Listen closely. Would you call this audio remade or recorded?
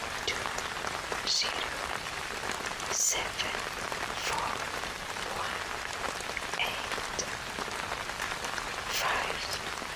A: remade